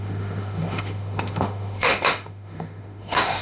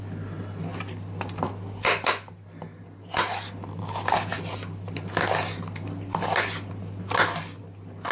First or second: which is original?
second